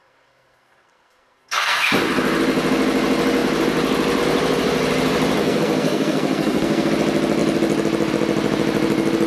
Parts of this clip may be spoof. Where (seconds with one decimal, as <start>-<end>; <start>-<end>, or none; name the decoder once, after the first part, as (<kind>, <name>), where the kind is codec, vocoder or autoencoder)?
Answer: 0.0-1.9 (codec, SNAC); 5.4-6.9